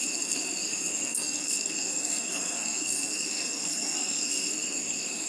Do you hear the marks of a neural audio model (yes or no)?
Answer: yes